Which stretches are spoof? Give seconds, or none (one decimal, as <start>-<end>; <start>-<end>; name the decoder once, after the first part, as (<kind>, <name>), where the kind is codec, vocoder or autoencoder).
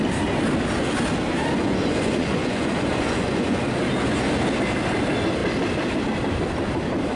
1.6-3.6 (vocoder, Vocos)